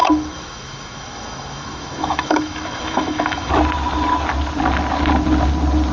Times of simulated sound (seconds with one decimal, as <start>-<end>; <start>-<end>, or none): 0.0-3.5